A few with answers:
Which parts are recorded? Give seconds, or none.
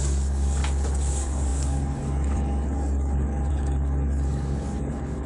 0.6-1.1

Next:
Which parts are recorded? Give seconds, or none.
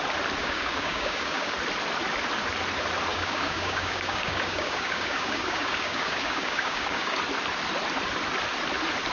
0.0-0.4; 1.5-3.1; 7.2-9.1